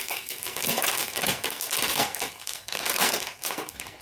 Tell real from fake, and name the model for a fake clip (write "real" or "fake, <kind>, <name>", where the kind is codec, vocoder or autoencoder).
fake, codec, SNAC